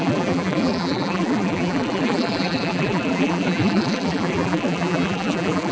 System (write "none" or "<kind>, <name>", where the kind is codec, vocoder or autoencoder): vocoder, BigVGAN v2